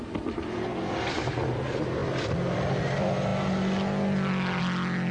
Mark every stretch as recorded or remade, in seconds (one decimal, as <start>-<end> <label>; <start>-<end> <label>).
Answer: 0.0-5.1 recorded